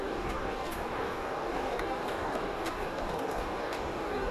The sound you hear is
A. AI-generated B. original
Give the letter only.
A